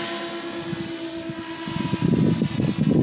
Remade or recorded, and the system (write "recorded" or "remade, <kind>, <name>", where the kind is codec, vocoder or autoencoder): recorded